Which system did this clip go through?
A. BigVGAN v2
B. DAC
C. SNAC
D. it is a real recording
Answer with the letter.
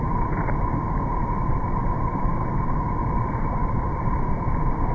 A